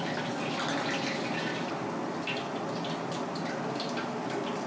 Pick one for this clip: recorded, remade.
recorded